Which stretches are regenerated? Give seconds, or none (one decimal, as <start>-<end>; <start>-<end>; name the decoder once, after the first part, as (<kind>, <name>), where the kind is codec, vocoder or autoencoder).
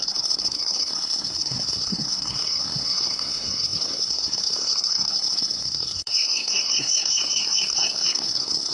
0.0-8.7 (codec, SNAC)